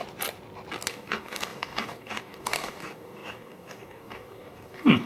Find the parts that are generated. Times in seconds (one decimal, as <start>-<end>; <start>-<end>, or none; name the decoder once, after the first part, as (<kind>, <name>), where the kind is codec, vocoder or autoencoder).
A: 0.9-5.1 (codec, DAC)